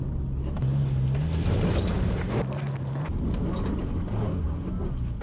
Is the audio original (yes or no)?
yes